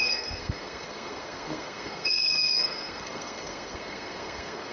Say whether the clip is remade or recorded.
remade